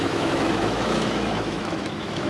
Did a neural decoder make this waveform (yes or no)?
yes